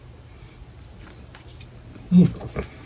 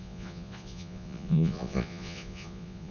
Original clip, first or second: first